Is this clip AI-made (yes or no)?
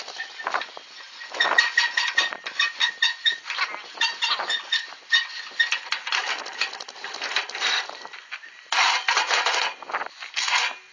no